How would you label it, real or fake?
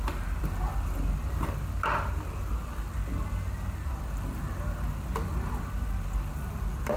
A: real